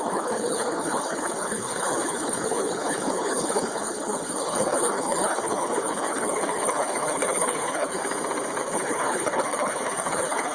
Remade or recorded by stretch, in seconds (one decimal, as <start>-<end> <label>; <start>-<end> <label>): 0.0-8.0 remade; 8.0-8.6 recorded; 8.6-10.5 remade